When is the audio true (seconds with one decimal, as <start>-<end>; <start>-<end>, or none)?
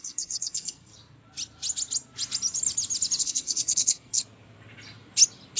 0.9-3.2; 4.2-5.6